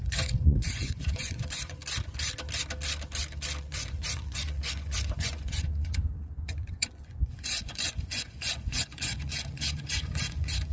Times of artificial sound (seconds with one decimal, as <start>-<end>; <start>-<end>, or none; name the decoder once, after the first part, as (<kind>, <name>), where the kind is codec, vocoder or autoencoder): 0.0-1.8 (vocoder, Vocos); 3.6-10.7